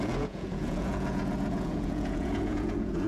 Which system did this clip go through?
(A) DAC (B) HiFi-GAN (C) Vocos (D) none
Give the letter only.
C